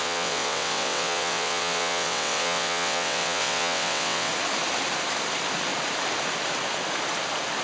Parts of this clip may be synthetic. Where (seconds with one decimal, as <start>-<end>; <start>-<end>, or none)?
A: 0.0-4.3